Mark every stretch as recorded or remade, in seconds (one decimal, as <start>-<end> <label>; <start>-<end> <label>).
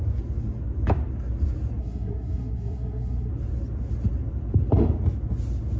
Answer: 0.0-1.8 recorded; 1.8-3.3 remade; 3.3-5.8 recorded